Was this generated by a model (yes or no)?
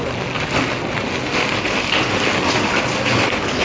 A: no